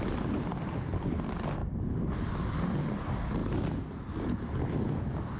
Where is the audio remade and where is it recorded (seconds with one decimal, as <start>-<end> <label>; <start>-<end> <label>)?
0.0-5.4 recorded